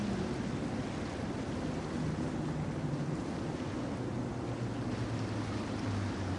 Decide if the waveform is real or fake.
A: real